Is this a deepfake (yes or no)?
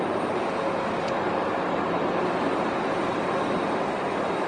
no